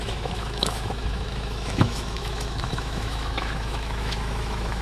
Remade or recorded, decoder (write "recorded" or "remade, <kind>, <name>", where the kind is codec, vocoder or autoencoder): remade, autoencoder, DAC-VAE